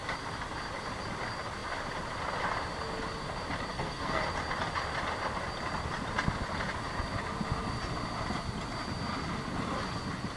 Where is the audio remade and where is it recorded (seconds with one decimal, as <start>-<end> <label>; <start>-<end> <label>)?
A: 0.0-3.7 recorded; 3.7-4.2 remade; 4.2-10.4 recorded